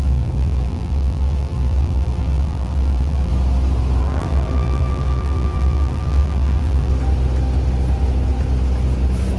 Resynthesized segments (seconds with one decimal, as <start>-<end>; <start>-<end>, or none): 0.0-3.3; 4.0-6.9